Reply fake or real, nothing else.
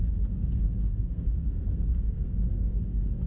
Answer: fake